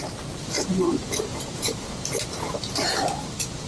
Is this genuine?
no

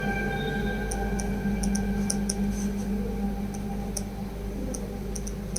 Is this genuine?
yes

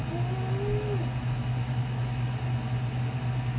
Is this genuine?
yes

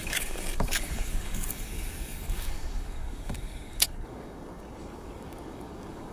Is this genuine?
no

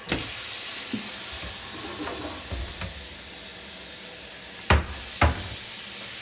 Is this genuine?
yes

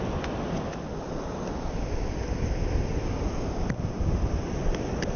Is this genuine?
yes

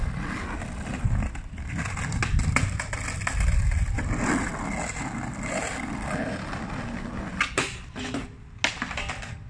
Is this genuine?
yes